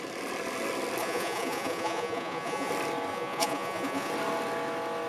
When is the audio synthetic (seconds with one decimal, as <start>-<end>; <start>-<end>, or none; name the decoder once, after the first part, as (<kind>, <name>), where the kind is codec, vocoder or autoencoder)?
1.0-2.7 (vocoder, Vocos); 3.1-4.1